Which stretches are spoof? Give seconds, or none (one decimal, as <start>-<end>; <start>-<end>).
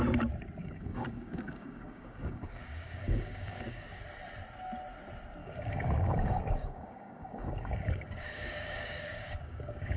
0.6-4.0; 5.4-10.0